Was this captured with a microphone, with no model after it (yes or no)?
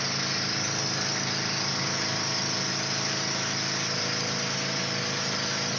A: yes